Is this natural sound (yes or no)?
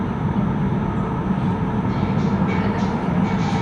yes